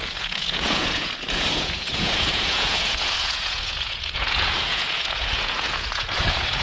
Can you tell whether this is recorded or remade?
remade